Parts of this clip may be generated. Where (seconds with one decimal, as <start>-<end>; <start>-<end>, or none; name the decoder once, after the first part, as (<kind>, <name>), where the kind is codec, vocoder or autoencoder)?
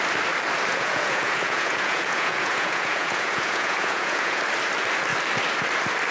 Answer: 0.7-4.4 (vocoder, Vocos)